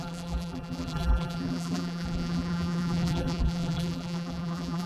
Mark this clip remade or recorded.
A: remade